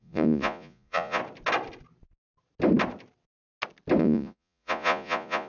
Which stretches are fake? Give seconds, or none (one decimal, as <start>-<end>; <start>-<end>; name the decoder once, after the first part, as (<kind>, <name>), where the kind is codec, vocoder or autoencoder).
0.0-1.2 (vocoder, Vocos); 4.0-5.5